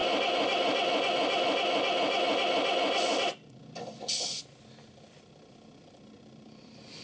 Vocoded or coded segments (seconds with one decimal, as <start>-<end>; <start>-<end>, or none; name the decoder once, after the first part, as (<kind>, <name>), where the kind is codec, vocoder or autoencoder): none